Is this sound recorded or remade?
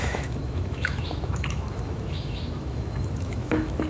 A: remade